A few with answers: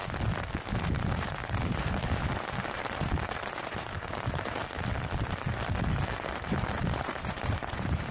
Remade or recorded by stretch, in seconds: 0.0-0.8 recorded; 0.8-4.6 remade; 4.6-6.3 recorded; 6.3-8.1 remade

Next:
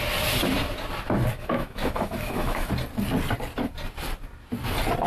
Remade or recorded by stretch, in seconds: 0.0-1.3 recorded; 1.3-2.7 remade; 2.7-5.1 recorded

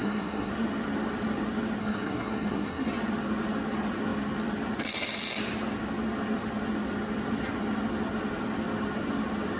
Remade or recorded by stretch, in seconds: 0.0-0.5 remade; 0.5-1.8 recorded; 1.8-2.9 remade; 2.9-9.6 recorded

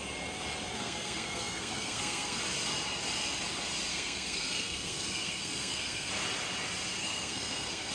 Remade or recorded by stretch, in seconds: 0.0-0.7 recorded; 0.7-2.4 remade; 2.4-3.9 recorded; 3.9-6.1 remade; 6.1-7.0 recorded; 7.0-7.9 remade